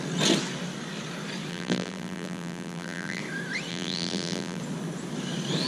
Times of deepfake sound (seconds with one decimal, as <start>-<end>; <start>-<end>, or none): 1.5-3.2; 3.7-4.6